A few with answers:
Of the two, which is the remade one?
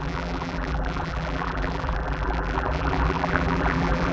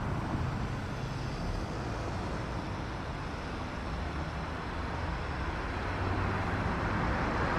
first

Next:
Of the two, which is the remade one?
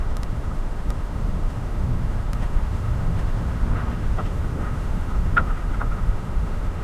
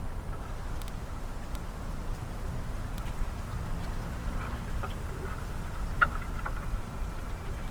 first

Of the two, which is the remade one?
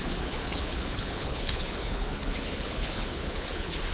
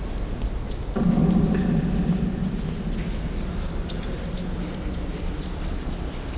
first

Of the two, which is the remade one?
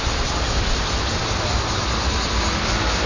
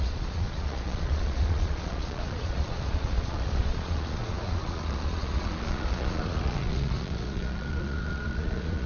second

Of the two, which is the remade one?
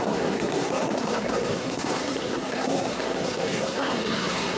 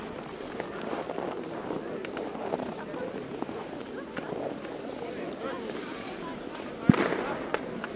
first